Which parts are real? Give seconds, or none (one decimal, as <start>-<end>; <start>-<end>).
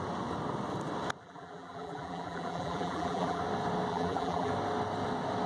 0.0-1.2; 3.4-3.9; 4.5-5.5